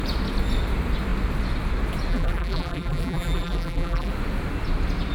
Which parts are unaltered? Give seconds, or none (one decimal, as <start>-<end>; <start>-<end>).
0.0-2.1; 4.1-5.1